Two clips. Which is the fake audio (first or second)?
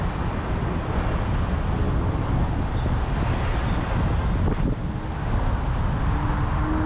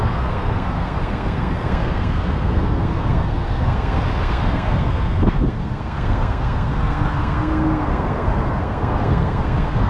second